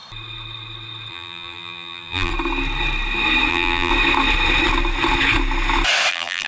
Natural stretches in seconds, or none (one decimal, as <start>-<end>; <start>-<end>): 0.0-1.1; 2.3-3.5; 3.9-6.1